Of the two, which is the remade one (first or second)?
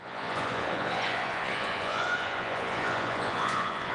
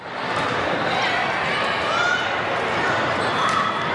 first